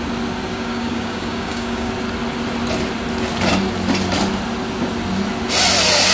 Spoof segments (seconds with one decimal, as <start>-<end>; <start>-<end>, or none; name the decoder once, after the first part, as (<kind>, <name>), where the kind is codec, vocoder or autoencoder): 0.5-1.9 (codec, DAC)